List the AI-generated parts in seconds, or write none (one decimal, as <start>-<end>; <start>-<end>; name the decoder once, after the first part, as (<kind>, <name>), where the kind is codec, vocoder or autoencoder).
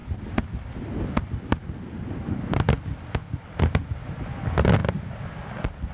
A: 0.0-1.0 (vocoder, BigVGAN v2); 3.2-3.8